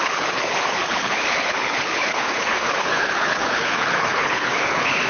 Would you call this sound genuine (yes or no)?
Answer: no